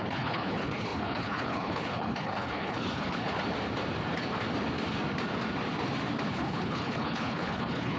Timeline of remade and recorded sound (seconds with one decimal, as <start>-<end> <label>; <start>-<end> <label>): 0.0-3.2 remade; 3.2-6.3 recorded; 6.3-8.0 remade